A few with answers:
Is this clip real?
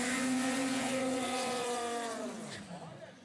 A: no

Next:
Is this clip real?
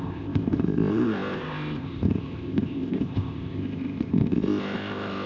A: no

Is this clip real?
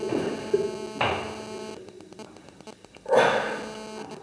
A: yes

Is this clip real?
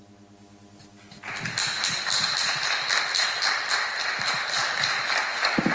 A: yes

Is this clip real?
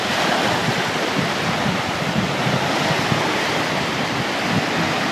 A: yes